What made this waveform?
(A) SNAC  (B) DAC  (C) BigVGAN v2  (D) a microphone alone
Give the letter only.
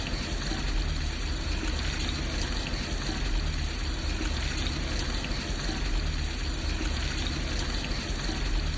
D